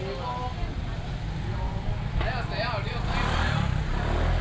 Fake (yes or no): no